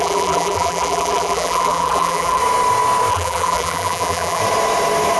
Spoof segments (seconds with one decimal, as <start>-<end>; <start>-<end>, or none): 0.0-2.4; 3.1-4.4